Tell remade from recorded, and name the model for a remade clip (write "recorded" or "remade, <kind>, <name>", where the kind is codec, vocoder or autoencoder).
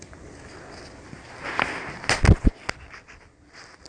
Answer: recorded